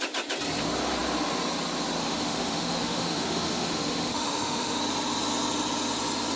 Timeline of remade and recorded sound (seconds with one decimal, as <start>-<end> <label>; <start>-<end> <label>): 0.0-2.0 recorded; 2.0-4.8 remade; 4.8-6.4 recorded